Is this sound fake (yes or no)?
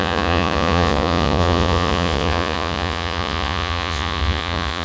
yes